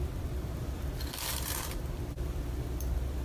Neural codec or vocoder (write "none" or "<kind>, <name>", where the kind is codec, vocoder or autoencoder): vocoder, BigVGAN v2